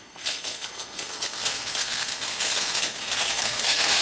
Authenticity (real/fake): fake